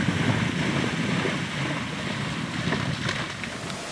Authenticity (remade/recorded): recorded